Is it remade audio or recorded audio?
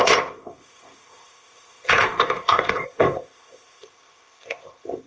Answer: remade